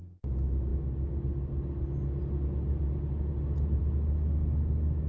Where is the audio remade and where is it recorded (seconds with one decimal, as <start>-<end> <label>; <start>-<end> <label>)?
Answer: 0.0-5.1 recorded